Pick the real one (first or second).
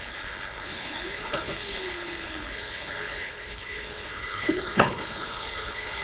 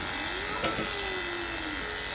second